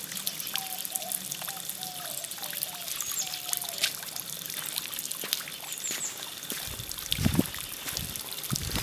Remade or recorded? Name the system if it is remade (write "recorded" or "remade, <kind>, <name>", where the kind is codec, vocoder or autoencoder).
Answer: recorded